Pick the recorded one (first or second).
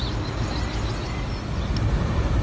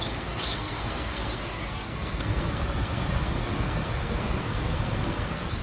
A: first